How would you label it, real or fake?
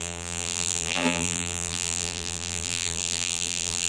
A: fake